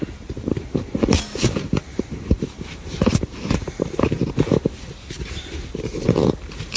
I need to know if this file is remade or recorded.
remade